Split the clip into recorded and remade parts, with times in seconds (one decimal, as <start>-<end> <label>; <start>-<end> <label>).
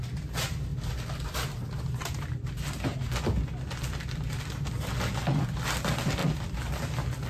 0.0-7.3 recorded